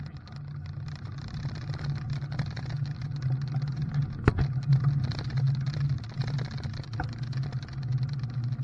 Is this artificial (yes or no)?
no